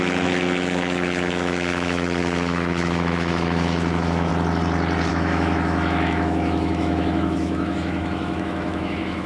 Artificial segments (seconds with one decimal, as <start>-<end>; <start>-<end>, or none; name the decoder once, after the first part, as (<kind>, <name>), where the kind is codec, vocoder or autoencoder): 0.0-4.3 (autoencoder, DAC-VAE); 5.1-9.3